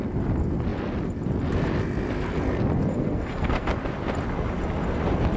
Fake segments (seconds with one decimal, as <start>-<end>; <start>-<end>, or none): 2.9-3.7

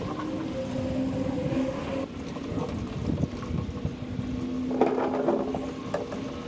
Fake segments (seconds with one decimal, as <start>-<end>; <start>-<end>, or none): none

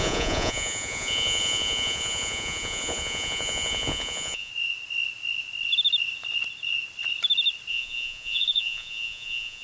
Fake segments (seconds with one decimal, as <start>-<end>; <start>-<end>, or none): 0.0-4.5; 7.7-9.6